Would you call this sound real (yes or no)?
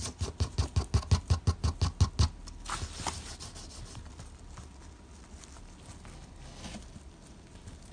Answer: yes